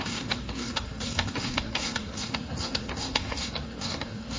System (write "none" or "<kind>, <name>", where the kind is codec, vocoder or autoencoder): codec, SNAC